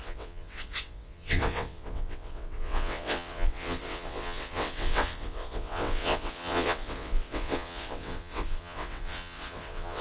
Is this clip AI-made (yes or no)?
yes